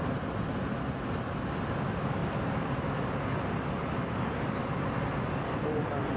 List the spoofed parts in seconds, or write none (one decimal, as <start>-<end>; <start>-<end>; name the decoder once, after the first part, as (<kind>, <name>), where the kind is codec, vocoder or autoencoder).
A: none